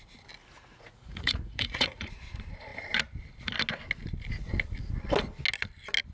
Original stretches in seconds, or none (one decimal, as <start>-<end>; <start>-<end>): 0.0-0.4; 2.1-6.1